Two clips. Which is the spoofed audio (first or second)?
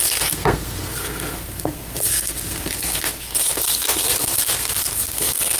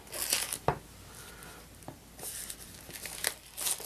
first